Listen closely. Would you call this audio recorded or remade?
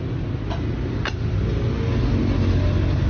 recorded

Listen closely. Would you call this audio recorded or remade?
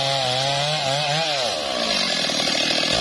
recorded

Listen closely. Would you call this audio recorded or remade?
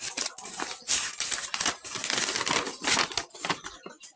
remade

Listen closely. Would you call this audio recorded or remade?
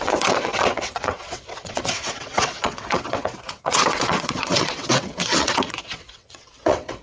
remade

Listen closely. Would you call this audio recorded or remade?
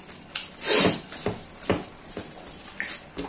recorded